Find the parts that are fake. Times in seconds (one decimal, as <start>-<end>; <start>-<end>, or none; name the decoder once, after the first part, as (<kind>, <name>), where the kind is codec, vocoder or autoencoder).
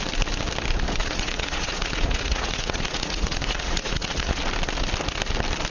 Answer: 1.0-4.4 (vocoder, Vocos)